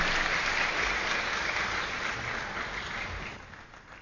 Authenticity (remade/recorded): recorded